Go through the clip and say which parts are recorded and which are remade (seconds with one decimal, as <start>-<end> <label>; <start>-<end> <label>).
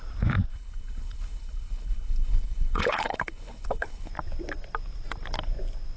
0.0-0.5 recorded; 0.5-4.1 remade; 4.1-6.0 recorded